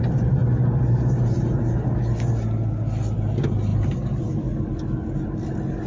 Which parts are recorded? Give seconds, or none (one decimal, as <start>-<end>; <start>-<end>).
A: 0.0-5.9